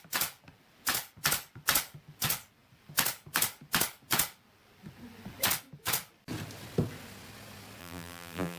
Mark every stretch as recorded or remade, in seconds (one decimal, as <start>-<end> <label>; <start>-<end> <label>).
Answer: 0.0-7.8 recorded; 7.8-8.6 remade